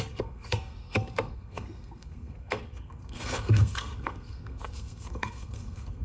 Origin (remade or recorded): remade